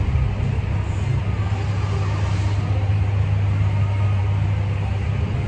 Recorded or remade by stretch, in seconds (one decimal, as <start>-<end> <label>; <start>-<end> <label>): 0.0-5.5 recorded

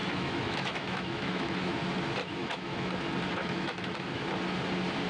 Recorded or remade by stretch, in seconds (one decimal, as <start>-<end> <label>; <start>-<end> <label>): 0.0-1.7 remade; 1.7-2.4 recorded; 2.4-2.9 remade; 2.9-3.4 recorded; 3.4-4.2 remade; 4.2-5.1 recorded